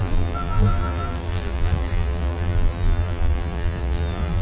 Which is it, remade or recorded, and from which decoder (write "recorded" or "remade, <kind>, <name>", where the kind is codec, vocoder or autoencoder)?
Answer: remade, vocoder, BigVGAN v2